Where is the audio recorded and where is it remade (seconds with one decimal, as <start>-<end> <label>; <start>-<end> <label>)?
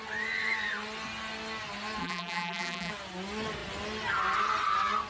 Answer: 0.0-2.0 recorded; 2.0-2.9 remade; 2.9-5.1 recorded